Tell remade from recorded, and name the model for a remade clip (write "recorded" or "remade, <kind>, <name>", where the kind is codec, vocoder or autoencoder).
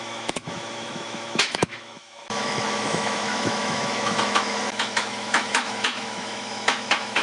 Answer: remade, autoencoder, DAC-VAE